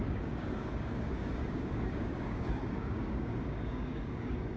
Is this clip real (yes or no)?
no